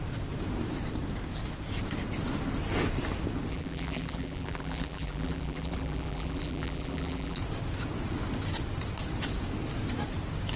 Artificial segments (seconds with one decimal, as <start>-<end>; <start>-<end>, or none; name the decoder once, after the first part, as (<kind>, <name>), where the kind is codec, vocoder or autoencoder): 3.5-7.4 (vocoder, BigVGAN v2)